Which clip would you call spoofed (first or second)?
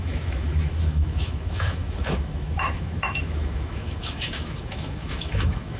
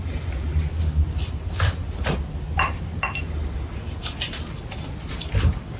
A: first